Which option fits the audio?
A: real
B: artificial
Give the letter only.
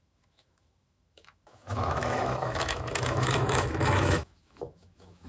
B